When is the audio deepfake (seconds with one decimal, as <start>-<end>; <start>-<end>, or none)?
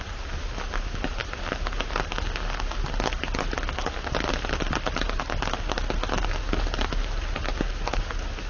none